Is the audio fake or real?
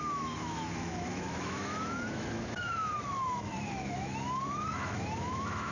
fake